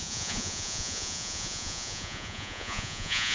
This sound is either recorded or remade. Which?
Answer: remade